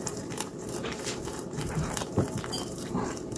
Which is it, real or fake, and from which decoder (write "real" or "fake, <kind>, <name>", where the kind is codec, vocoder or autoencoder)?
fake, vocoder, BigVGAN v2